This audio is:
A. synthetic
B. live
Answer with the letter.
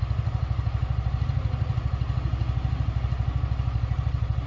B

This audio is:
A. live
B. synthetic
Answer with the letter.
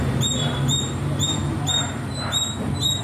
B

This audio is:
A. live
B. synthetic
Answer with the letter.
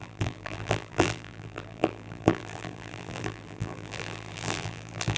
B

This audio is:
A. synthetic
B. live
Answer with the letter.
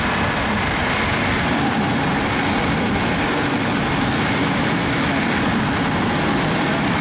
B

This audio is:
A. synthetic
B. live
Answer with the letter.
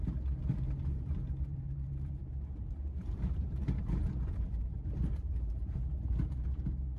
A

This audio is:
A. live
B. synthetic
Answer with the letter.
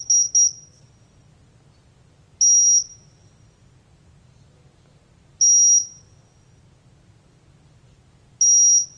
A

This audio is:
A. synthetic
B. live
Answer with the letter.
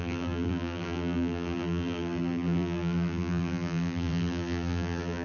A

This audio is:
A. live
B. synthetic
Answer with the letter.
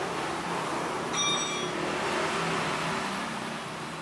A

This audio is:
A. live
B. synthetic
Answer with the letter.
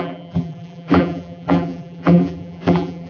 B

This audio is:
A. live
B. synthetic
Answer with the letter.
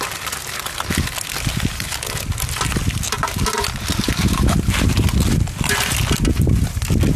A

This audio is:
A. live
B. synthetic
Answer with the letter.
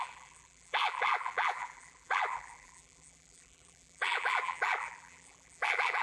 B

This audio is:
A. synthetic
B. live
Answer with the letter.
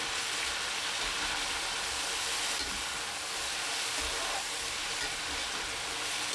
A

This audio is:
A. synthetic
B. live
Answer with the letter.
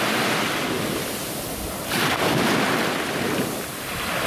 A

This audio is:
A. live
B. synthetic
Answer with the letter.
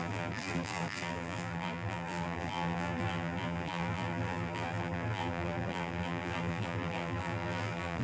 B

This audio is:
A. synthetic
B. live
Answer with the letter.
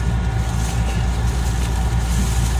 B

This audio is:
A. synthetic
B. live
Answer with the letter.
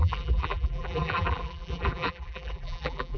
A